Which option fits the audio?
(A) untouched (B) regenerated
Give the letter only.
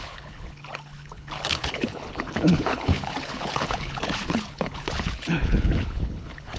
B